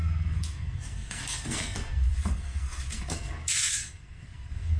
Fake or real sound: fake